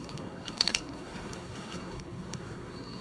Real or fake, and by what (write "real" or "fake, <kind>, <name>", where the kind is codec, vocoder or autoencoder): fake, codec, SNAC